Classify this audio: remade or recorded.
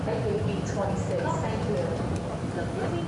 recorded